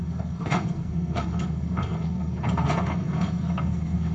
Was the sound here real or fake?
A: fake